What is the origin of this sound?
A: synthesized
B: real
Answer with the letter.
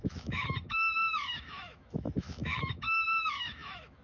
A